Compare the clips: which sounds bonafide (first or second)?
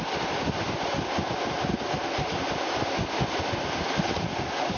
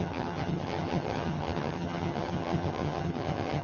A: first